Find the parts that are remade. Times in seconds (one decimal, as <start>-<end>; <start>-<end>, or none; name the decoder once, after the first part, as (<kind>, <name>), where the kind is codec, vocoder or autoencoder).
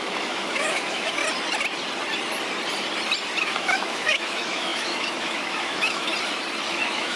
0.0-1.2 (autoencoder, DAC-VAE); 3.4-6.1; 6.7-7.2